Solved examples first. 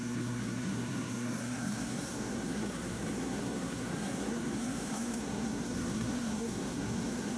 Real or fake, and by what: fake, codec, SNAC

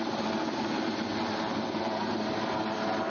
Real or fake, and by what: real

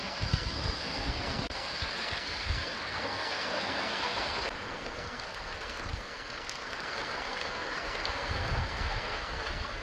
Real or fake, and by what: fake, codec, SNAC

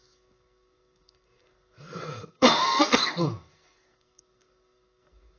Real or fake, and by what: fake, codec, SNAC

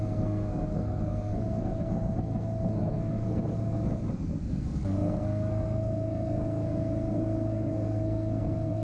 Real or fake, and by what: fake, codec, SNAC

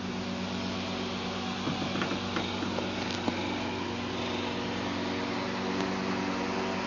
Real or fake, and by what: real